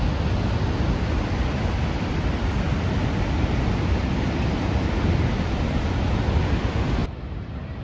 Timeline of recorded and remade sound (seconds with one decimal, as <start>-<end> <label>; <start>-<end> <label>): 0.0-7.0 recorded; 7.0-7.8 remade